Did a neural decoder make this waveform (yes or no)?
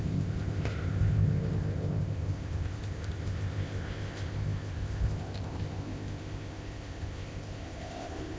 yes